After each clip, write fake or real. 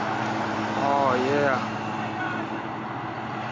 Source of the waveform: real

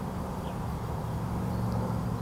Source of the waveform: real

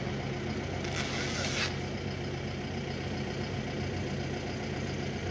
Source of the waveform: real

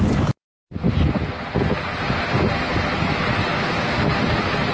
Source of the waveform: real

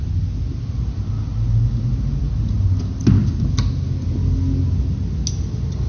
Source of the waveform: real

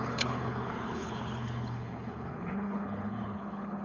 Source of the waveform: fake